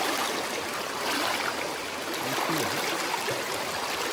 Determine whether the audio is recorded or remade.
recorded